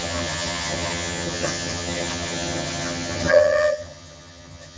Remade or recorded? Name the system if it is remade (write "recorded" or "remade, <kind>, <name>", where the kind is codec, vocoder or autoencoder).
remade, vocoder, HiFi-GAN